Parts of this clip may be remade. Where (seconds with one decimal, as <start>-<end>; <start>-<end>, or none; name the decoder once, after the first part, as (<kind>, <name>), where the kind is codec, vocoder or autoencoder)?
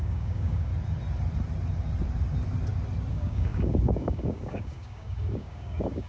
0.0-0.7 (codec, DAC); 3.1-6.1